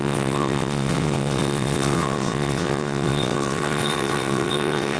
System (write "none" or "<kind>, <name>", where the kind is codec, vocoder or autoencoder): vocoder, WaveNeXt